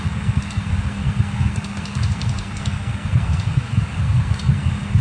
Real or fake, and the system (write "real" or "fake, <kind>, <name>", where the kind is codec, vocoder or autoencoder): fake, codec, SNAC